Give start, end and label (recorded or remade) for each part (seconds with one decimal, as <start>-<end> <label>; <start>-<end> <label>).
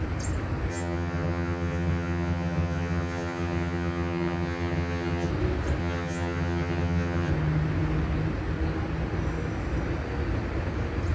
0.0-0.7 recorded; 0.7-5.3 remade; 5.3-5.8 recorded; 5.8-7.3 remade; 7.3-11.1 recorded